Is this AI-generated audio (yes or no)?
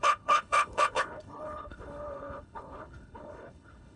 yes